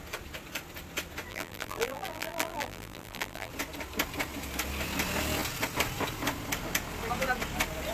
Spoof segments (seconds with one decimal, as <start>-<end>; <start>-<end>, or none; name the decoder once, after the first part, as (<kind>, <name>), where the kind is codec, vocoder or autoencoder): 1.3-3.5 (vocoder, BigVGAN v2)